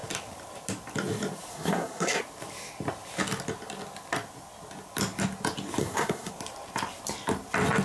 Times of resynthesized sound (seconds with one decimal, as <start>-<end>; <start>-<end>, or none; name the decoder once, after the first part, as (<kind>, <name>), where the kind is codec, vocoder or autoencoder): 1.5-2.2 (codec, SNAC); 5.8-6.3